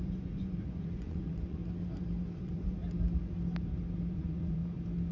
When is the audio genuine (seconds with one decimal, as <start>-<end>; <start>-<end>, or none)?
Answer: 1.6-2.4; 2.8-4.1; 4.6-5.1